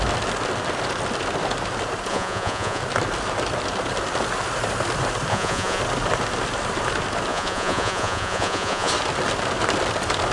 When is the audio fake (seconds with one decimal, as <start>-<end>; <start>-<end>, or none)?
2.1-2.8; 5.3-5.8; 7.3-8.9